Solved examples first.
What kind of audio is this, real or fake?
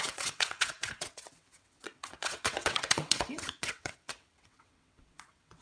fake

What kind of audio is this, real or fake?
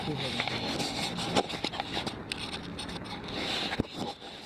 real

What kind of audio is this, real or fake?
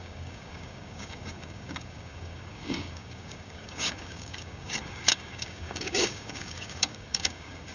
fake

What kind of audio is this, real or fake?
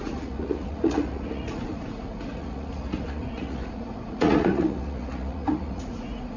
fake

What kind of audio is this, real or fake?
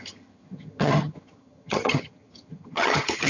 fake